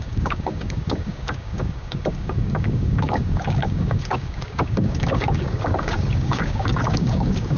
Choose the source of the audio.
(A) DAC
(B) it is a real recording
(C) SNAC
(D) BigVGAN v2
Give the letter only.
A